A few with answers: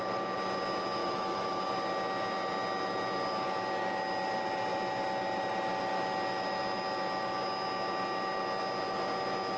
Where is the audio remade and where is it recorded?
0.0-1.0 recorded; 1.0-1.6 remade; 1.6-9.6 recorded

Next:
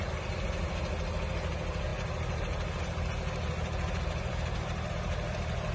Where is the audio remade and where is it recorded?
0.0-5.7 recorded

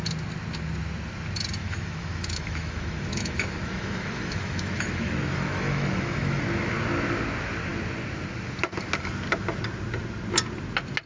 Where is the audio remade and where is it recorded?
0.0-1.6 recorded; 1.6-6.4 remade; 6.4-11.1 recorded

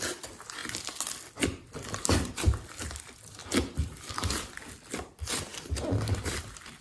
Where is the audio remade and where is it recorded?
0.0-0.6 recorded; 0.6-2.3 remade; 2.3-6.8 recorded